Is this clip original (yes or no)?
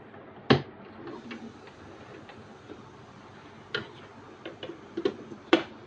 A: yes